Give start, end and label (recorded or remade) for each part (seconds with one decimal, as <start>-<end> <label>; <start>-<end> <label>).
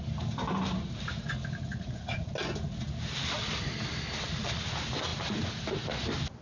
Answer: 0.0-1.7 recorded; 1.7-2.3 remade; 2.3-6.4 recorded